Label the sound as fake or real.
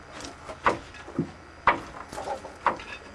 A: real